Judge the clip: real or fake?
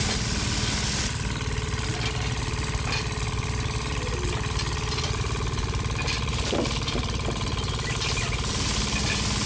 real